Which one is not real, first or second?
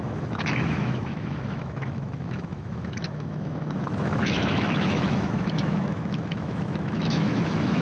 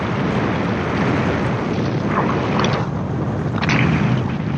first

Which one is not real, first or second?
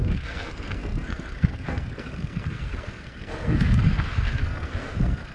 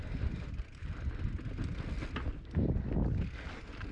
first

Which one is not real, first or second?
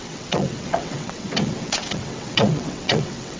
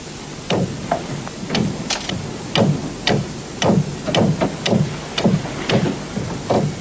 first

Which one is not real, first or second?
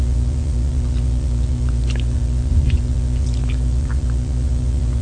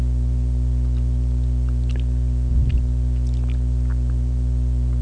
first